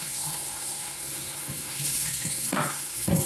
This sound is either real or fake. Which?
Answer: fake